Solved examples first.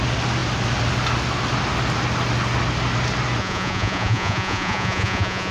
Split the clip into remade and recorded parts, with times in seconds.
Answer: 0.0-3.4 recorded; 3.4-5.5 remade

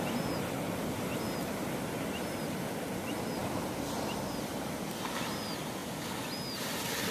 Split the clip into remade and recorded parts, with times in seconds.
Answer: 0.0-7.1 recorded

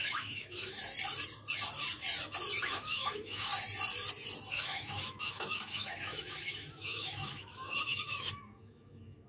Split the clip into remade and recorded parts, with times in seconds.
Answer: 0.0-0.8 remade; 0.8-2.6 recorded; 2.6-3.5 remade; 3.5-4.5 recorded; 4.5-9.3 remade